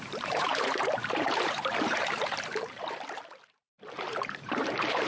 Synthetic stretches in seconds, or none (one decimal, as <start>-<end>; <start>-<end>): 0.0-5.1

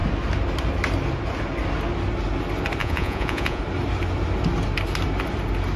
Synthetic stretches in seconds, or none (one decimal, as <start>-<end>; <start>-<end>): 2.8-3.6

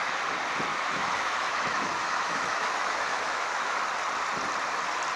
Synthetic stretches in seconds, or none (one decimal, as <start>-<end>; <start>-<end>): 0.7-3.8

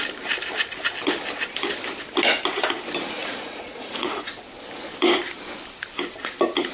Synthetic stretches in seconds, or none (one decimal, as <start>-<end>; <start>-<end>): 3.2-4.3

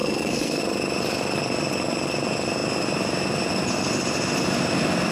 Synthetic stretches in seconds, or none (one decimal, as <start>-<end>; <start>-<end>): 0.0-0.6

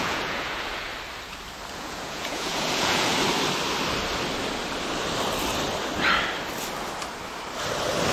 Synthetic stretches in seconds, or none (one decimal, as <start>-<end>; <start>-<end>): 0.0-0.9; 1.7-3.1